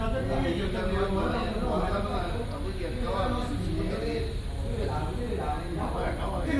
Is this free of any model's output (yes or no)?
yes